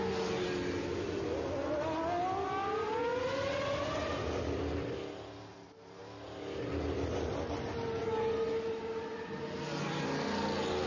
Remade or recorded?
recorded